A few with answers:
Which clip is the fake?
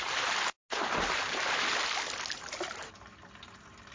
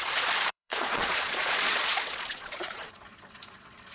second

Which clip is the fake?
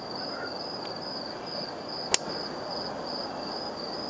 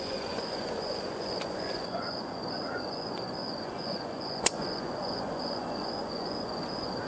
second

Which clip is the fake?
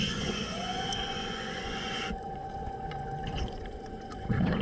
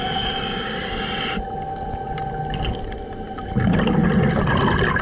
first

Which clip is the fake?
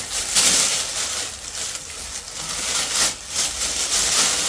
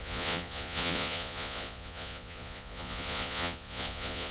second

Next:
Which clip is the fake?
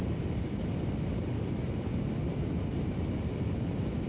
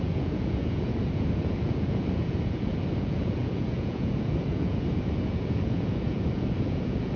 second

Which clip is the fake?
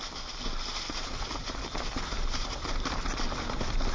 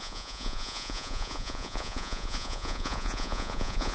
second